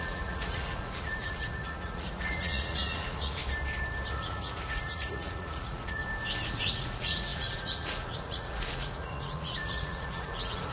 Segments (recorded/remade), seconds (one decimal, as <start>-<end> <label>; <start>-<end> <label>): 0.0-3.4 remade; 3.4-4.1 recorded; 4.1-6.0 remade; 6.0-6.5 recorded; 6.5-10.7 remade

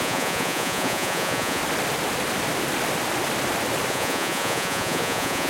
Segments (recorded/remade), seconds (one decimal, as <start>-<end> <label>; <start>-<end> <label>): 0.0-1.6 remade; 1.6-3.9 recorded; 3.9-5.5 remade